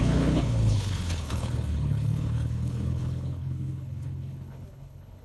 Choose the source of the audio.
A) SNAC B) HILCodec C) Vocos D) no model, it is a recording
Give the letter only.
B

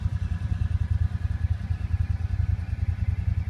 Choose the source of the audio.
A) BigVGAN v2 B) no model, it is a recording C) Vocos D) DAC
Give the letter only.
B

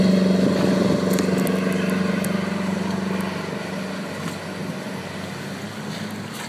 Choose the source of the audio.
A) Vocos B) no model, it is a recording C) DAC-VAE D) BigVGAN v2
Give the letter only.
B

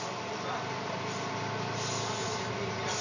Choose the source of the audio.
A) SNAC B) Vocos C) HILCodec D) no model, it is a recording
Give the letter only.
D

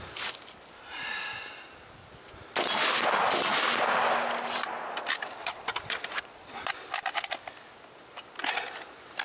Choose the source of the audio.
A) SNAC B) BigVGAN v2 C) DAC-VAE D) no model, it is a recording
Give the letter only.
D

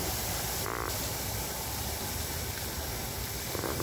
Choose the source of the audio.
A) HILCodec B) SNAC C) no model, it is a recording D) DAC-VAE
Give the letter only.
C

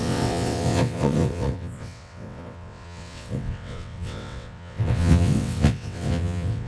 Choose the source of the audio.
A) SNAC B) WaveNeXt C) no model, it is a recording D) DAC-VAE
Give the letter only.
B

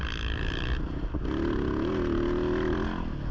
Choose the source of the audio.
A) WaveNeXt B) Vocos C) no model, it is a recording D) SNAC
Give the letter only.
C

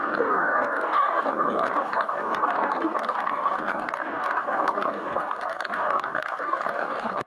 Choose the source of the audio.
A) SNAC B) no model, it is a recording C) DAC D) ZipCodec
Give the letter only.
C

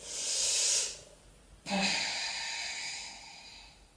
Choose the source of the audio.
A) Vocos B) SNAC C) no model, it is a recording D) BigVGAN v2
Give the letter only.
C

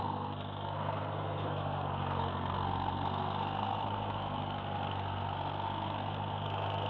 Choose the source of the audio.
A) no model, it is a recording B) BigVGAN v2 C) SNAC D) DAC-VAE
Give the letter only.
C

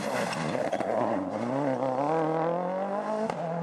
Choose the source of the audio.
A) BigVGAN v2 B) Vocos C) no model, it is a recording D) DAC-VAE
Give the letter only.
C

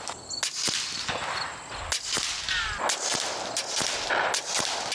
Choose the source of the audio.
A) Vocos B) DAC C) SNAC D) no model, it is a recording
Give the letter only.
D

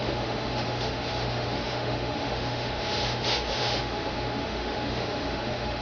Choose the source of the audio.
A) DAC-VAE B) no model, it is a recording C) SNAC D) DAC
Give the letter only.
A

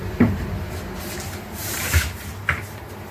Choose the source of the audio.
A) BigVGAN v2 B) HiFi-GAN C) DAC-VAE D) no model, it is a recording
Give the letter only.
A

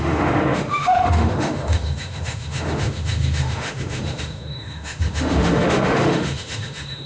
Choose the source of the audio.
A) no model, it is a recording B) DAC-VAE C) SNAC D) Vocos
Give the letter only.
B